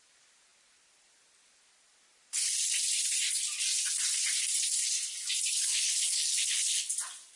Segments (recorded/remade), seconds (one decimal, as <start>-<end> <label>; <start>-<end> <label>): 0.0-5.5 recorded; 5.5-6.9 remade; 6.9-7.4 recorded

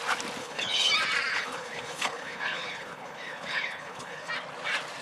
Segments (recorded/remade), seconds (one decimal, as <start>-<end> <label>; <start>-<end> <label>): 0.0-0.4 recorded; 0.4-0.9 remade; 0.9-1.3 recorded; 1.3-4.3 remade; 4.3-5.0 recorded

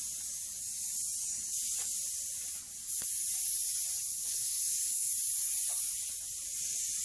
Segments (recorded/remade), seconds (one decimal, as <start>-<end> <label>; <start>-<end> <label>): 0.0-4.1 recorded; 4.1-5.1 remade; 5.1-7.0 recorded